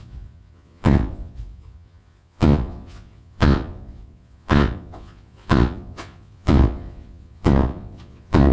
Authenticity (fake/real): fake